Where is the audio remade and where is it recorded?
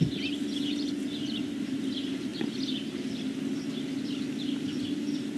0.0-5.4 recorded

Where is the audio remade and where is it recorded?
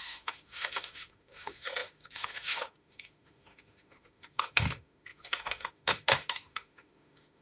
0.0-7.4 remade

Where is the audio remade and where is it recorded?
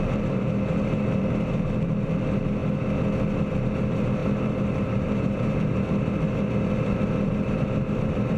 0.0-2.6 remade; 2.6-3.6 recorded; 3.6-8.4 remade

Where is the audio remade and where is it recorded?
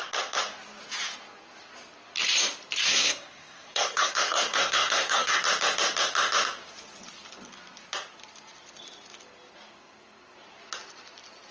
0.0-2.8 recorded; 2.8-5.4 remade; 5.4-11.5 recorded